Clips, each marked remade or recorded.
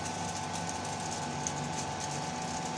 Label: recorded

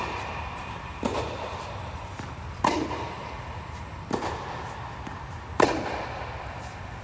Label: recorded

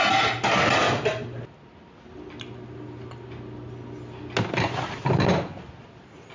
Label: recorded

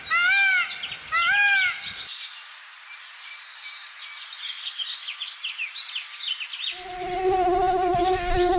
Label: recorded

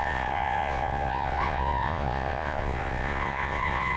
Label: remade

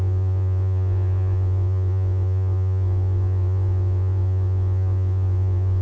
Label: remade